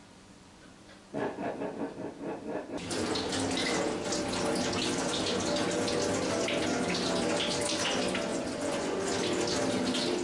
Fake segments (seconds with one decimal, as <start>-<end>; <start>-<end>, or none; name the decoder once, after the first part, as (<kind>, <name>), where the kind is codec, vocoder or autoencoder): 0.0-1.5 (vocoder, Vocos); 8.3-9.0